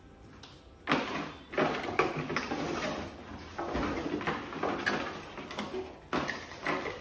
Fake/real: real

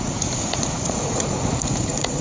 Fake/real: fake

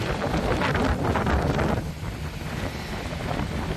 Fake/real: real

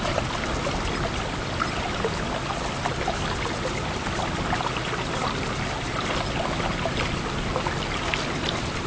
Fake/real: real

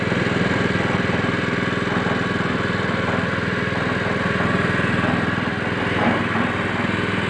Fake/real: real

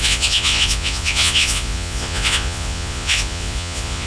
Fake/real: fake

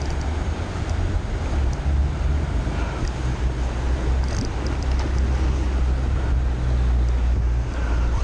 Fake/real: real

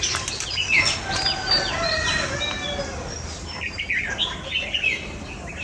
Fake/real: real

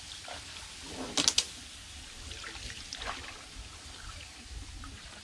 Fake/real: real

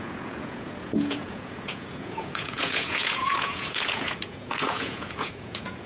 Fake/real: fake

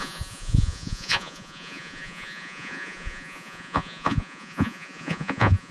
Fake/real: fake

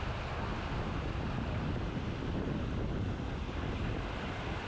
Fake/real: real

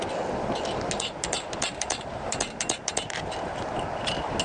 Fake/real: real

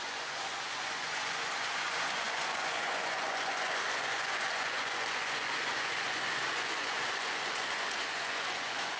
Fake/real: fake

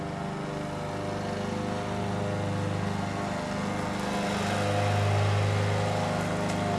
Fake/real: real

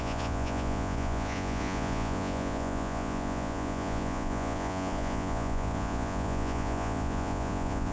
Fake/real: fake